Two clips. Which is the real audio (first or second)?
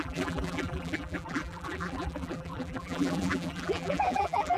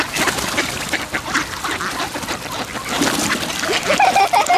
second